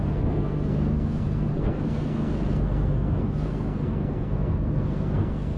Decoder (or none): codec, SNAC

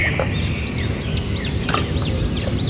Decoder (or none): none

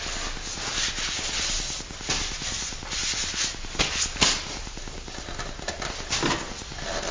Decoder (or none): none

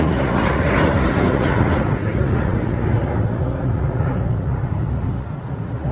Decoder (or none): vocoder, Vocos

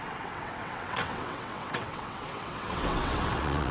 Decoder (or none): vocoder, WaveNeXt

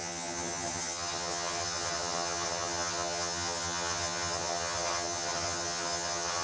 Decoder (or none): vocoder, HiFi-GAN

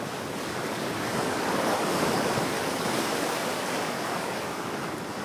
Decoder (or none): codec, DAC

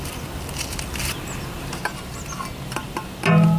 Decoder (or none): none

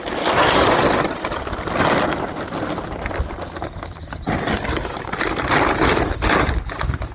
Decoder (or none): none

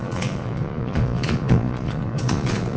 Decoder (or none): vocoder, Vocos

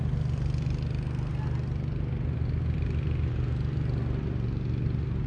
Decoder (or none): none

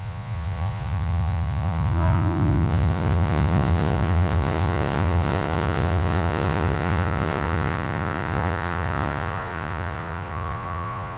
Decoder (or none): vocoder, Vocos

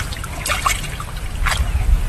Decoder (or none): none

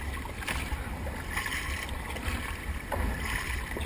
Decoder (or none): none